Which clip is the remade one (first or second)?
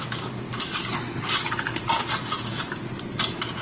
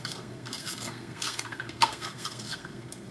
second